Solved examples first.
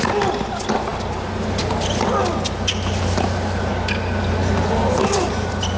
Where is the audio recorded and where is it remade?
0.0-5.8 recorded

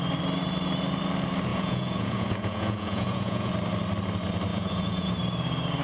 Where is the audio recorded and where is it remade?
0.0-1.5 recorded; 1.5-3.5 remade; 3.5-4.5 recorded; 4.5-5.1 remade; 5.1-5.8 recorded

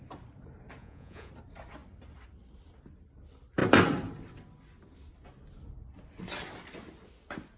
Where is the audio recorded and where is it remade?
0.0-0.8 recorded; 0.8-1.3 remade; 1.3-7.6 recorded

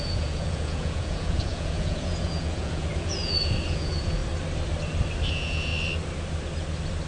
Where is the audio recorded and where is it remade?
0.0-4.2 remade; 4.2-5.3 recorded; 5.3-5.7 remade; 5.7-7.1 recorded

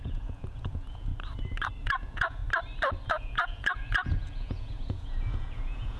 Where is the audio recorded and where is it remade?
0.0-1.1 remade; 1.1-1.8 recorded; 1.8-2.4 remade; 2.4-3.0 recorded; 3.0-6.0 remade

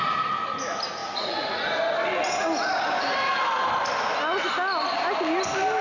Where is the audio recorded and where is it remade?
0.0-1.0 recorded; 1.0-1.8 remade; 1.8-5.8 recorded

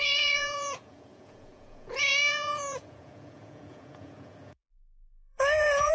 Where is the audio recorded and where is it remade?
0.0-5.9 remade